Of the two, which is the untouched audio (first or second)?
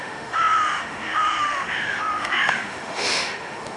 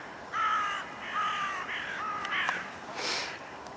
second